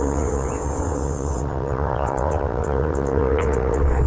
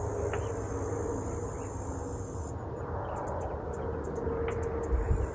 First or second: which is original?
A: second